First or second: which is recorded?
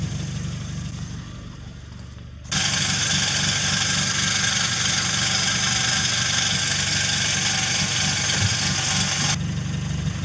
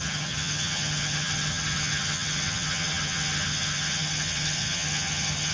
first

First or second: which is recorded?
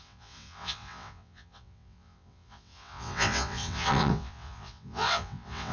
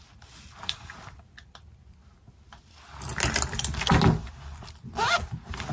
second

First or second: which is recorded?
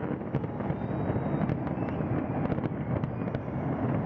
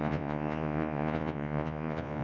first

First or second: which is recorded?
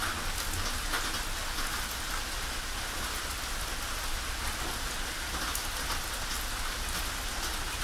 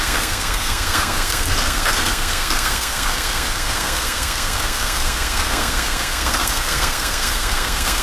first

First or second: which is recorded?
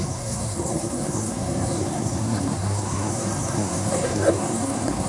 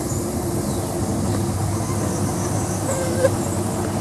second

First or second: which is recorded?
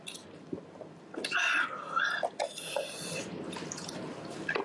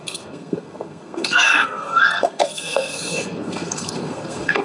first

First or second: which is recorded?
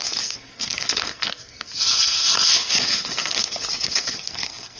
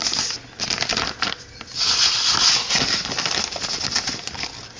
second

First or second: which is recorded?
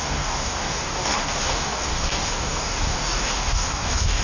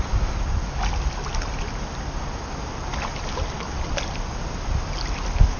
second